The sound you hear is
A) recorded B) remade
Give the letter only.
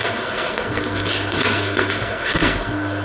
B